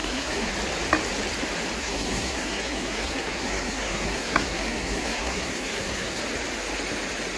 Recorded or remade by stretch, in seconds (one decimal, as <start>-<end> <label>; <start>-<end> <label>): 0.0-0.5 remade; 0.5-1.8 recorded; 1.8-6.2 remade; 6.2-7.4 recorded